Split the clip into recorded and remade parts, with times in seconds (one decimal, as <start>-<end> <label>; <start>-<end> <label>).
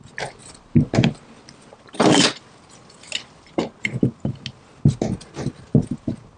0.0-0.4 recorded; 0.4-1.2 remade; 1.2-6.4 recorded